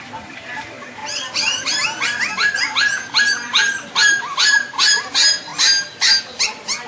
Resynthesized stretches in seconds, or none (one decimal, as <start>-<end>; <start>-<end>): none